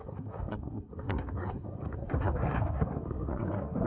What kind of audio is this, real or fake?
fake